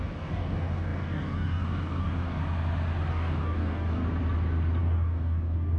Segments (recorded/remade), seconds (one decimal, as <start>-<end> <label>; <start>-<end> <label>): 0.0-2.4 remade; 2.4-3.1 recorded; 3.1-4.0 remade; 4.0-4.8 recorded; 4.8-5.8 remade